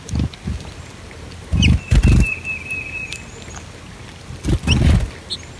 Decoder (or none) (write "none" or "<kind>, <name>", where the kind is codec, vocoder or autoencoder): none